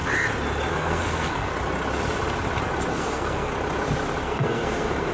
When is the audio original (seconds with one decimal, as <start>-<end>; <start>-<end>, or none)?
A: 0.0-0.7; 1.5-2.9; 3.5-4.2